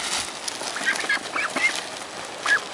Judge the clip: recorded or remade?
recorded